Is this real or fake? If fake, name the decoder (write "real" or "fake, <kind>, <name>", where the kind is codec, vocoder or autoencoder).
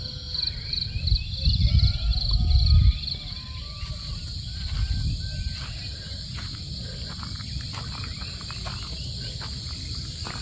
real